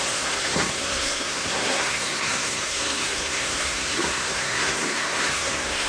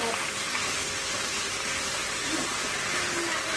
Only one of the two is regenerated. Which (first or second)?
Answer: first